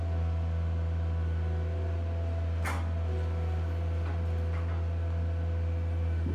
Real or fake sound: real